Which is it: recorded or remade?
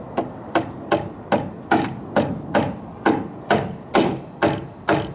recorded